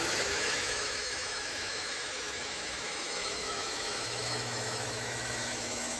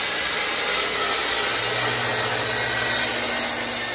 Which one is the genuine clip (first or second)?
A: second